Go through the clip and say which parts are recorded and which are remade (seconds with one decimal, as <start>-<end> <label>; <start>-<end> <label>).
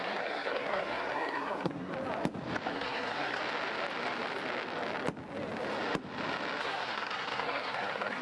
0.0-1.9 remade; 1.9-2.7 recorded; 2.7-3.4 remade; 3.4-6.6 recorded; 6.6-8.2 remade